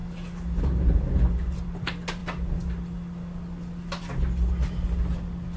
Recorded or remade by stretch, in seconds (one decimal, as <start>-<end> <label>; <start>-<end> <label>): 0.0-5.6 recorded